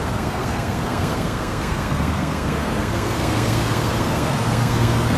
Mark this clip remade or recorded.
remade